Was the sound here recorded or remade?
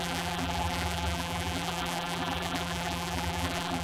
remade